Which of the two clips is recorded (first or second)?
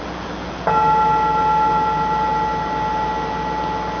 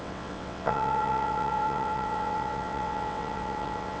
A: first